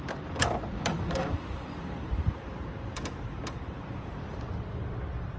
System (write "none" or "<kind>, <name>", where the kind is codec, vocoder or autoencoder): vocoder, BigVGAN v2